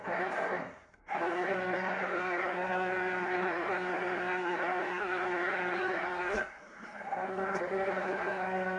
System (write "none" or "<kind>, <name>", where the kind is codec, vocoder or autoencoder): codec, SNAC